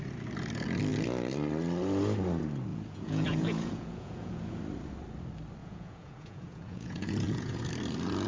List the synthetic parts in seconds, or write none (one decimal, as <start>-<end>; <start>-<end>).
2.7-4.6; 5.6-7.7